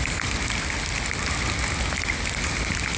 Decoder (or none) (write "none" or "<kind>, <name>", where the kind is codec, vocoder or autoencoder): none